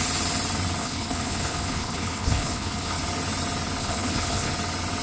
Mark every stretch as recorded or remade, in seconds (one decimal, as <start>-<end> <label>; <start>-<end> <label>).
0.0-0.8 recorded; 0.8-3.0 remade; 3.0-3.8 recorded; 3.8-4.5 remade; 4.5-5.0 recorded